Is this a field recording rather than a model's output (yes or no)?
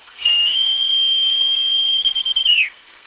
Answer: no